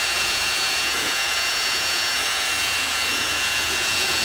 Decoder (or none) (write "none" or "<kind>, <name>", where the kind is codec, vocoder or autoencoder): vocoder, Vocos